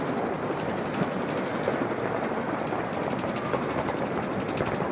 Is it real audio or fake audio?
real